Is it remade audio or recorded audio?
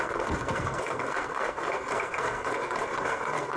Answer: remade